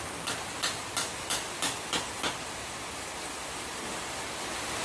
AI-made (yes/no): no